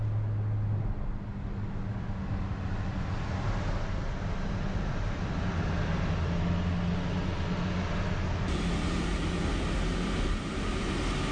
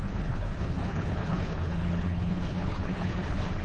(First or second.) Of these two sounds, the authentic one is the first